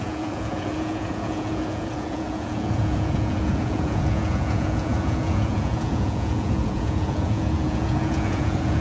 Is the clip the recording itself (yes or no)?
no